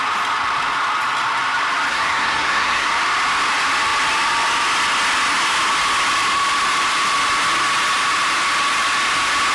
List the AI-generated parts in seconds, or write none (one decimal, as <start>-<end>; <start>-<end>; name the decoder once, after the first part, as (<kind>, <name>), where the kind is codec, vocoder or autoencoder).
1.9-2.9 (codec, SNAC)